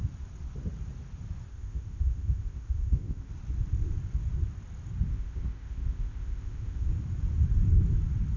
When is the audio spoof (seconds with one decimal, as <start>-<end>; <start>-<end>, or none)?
1.5-3.3; 5.1-6.9